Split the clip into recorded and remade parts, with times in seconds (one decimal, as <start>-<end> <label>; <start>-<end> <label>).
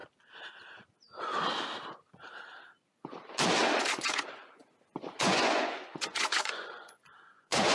0.0-3.8 recorded; 3.8-4.6 remade; 4.6-5.2 recorded; 5.2-7.7 remade